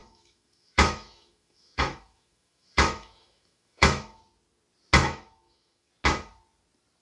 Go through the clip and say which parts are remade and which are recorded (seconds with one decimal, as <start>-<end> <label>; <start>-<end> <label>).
0.0-4.2 remade; 4.2-5.0 recorded; 5.0-5.9 remade; 5.9-7.0 recorded